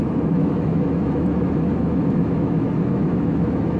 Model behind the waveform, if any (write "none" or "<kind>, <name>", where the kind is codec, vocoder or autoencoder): autoencoder, DAC-VAE